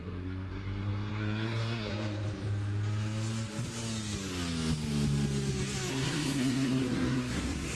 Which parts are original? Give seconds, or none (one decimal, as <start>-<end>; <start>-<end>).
1.9-5.9